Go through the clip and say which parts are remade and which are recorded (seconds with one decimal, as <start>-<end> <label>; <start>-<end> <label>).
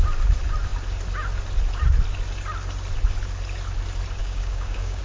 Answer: 0.0-4.2 recorded; 4.2-5.0 remade